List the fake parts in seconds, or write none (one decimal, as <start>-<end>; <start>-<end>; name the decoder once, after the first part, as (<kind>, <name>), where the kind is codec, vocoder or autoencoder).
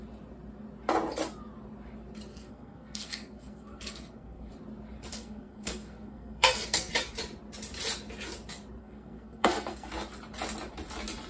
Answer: 2.3-4.5 (codec, SNAC); 5.1-6.9; 8.8-9.9